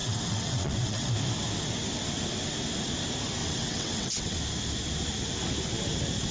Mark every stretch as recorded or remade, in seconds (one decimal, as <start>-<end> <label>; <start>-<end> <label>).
0.0-1.1 remade; 1.1-3.4 recorded; 3.4-4.4 remade; 4.4-6.3 recorded